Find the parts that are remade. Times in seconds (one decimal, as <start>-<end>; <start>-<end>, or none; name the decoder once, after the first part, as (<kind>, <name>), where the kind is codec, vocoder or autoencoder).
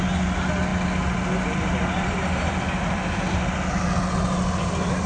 none